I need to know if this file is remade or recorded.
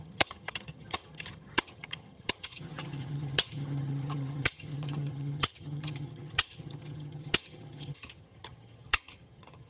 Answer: remade